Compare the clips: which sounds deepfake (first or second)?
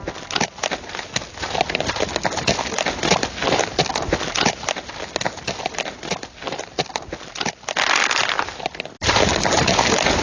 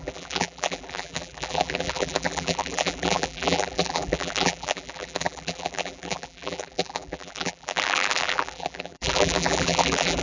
second